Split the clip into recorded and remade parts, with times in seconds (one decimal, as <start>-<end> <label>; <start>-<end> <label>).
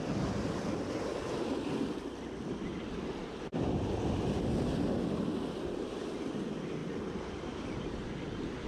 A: 0.0-8.7 recorded